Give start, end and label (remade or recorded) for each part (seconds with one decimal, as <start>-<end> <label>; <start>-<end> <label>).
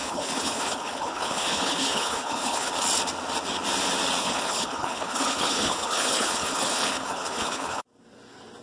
0.0-2.7 remade; 2.7-4.2 recorded; 4.2-7.8 remade; 7.8-8.6 recorded